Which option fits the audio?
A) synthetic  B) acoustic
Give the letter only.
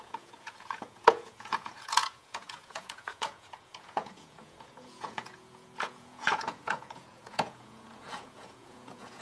A